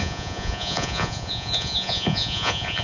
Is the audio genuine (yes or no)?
no